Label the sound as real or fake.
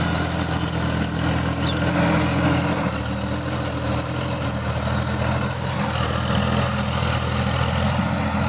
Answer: real